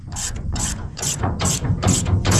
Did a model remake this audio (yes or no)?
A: yes